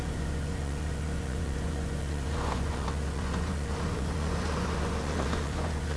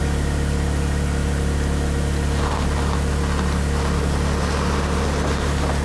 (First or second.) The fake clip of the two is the first